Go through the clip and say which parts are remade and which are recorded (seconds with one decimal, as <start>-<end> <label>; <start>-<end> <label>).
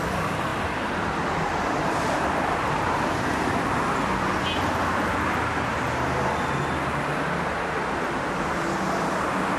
0.0-9.6 recorded